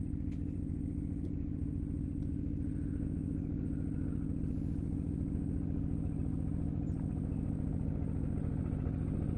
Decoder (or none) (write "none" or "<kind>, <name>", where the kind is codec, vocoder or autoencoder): none